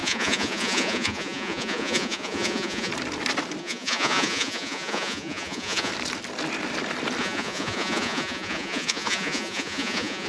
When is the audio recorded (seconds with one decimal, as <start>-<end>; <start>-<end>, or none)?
2.9-3.6; 5.9-7.2